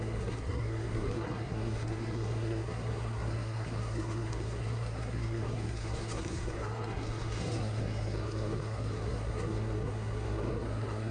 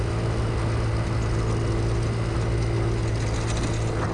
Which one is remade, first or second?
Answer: first